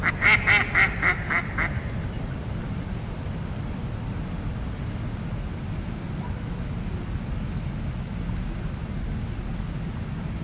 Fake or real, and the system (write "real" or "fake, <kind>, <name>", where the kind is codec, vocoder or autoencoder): real